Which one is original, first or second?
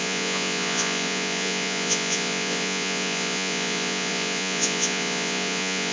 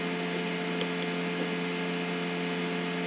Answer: second